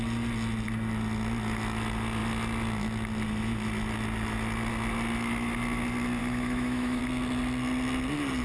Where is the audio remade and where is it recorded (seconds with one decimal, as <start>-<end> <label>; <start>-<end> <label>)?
0.0-6.2 recorded; 6.2-7.0 remade; 7.0-8.4 recorded

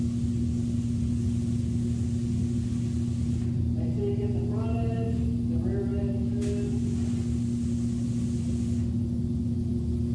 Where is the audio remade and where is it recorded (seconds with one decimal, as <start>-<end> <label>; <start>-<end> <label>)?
0.0-10.1 recorded

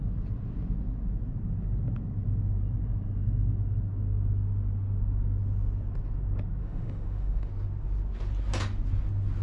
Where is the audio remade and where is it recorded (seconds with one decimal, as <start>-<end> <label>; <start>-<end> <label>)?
0.0-6.6 recorded; 6.6-7.5 remade; 7.5-9.4 recorded

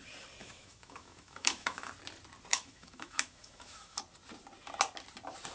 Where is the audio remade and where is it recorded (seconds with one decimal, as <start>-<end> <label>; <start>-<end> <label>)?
0.0-0.4 recorded; 0.4-1.9 remade; 1.9-2.5 recorded; 2.5-4.0 remade; 4.0-5.5 recorded